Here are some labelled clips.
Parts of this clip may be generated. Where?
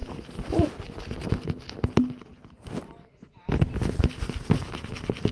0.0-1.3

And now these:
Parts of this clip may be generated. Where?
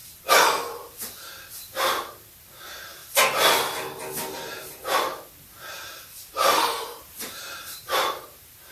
2.4-3.0; 4.5-8.7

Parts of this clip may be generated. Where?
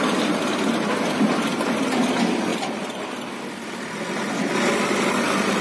2.5-3.9